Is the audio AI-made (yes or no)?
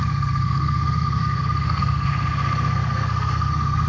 yes